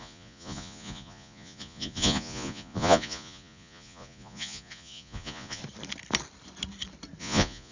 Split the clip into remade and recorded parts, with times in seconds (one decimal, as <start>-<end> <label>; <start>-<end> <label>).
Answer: 0.0-5.6 remade; 5.6-7.2 recorded; 7.2-7.7 remade